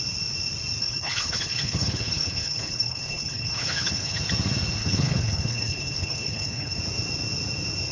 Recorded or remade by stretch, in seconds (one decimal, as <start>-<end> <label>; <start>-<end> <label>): 0.0-0.8 recorded; 0.8-4.2 remade; 4.2-4.8 recorded; 4.8-6.8 remade; 6.8-7.9 recorded